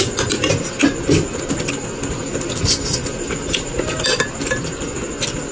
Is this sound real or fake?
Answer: real